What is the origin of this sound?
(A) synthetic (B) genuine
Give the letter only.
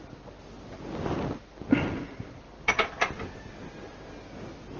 B